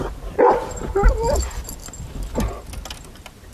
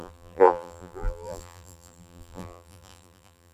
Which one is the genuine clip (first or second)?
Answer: first